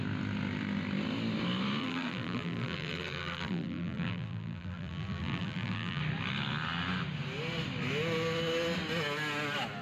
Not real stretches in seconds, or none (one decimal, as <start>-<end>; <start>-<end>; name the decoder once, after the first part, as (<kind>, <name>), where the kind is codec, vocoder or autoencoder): 1.8-6.0 (vocoder, BigVGAN v2)